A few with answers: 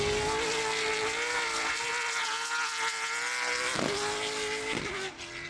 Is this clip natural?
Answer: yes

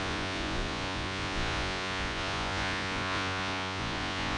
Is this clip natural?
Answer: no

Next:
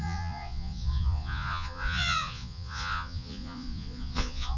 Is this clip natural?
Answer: no